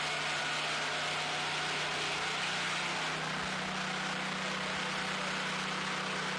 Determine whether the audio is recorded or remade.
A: recorded